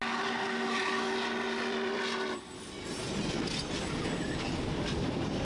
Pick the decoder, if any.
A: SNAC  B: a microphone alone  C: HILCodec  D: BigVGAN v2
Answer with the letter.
B